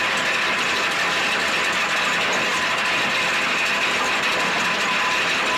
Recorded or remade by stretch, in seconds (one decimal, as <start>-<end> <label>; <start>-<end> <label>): 0.0-5.6 recorded